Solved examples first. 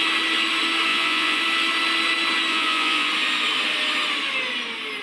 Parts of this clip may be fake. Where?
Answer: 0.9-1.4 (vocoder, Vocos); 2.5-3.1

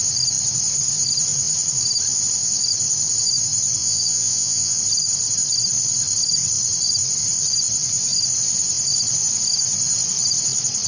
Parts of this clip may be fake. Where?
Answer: 3.8-4.8 (vocoder, Vocos)

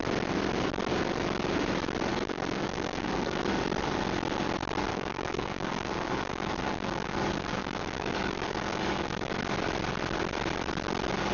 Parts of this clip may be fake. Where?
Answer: 2.1-3.4 (codec, DAC); 4.9-9.4

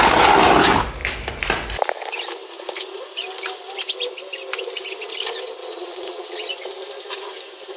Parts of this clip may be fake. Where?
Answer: 5.6-6.5 (vocoder, Vocos)

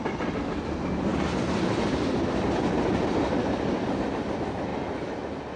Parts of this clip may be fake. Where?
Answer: none

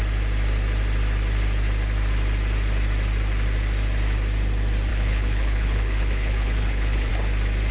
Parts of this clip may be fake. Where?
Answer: 4.9-7.1 (codec, HILCodec)

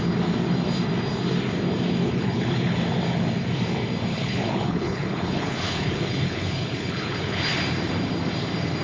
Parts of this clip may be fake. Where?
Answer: 2.0-2.8 (codec, HILCodec); 4.1-7.5

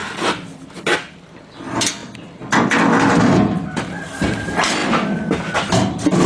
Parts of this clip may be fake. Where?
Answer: none